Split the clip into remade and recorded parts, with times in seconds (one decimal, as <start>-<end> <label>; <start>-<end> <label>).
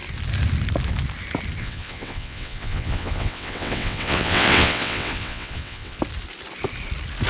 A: 0.0-1.6 recorded; 1.6-6.0 remade; 6.0-7.3 recorded